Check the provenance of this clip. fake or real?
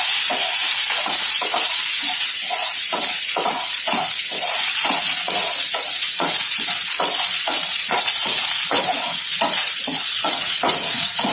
fake